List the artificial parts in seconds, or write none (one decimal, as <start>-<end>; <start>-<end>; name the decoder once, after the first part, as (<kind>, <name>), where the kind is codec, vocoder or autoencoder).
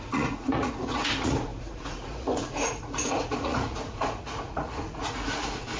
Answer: 0.0-5.8 (vocoder, Vocos)